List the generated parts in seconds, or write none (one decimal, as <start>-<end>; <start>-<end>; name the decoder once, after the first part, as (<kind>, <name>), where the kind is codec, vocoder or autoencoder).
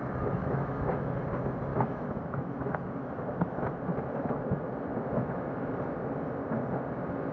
0.4-1.1 (autoencoder, DAC-VAE); 1.7-3.6; 4.9-5.7